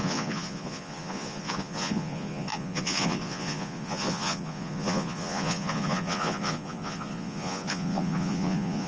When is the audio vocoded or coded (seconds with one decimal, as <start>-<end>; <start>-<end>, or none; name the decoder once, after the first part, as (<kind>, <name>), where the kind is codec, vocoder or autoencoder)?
0.0-8.9 (vocoder, Vocos)